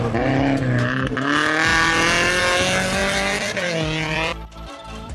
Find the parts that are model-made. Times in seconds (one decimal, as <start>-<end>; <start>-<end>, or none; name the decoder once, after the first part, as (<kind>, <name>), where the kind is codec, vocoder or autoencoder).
3.0-5.1 (vocoder, BigVGAN v2)